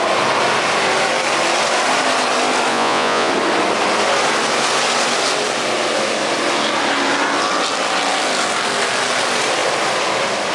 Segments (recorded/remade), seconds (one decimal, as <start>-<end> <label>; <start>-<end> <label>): 0.0-2.7 recorded; 2.7-3.3 remade; 3.3-10.5 recorded